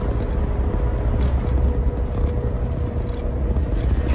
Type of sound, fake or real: real